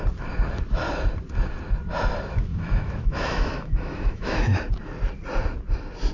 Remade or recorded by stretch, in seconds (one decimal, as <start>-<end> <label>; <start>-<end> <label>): 0.0-2.5 recorded; 2.5-4.5 remade; 4.5-6.1 recorded